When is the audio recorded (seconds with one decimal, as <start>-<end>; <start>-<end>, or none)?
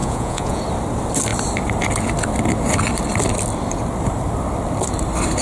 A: 0.6-5.4